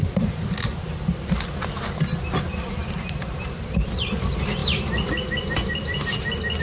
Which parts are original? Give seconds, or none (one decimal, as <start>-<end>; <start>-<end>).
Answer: 0.0-6.6